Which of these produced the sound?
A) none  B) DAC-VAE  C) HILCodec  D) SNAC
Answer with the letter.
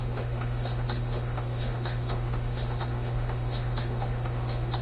B